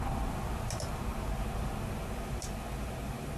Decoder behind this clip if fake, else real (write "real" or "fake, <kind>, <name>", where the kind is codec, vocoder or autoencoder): real